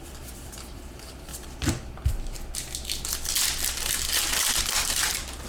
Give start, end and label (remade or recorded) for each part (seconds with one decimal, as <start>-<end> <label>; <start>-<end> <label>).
0.0-1.3 remade; 1.3-4.6 recorded; 4.6-5.5 remade